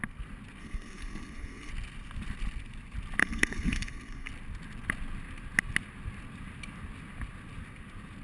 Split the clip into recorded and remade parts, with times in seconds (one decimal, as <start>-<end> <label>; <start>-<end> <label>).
0.0-0.6 recorded; 0.6-1.7 remade; 1.7-3.2 recorded; 3.2-4.3 remade; 4.3-8.2 recorded